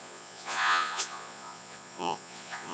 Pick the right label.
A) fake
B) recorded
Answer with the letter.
A